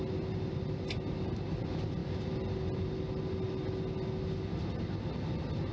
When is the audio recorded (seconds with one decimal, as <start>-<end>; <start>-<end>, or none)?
0.0-5.7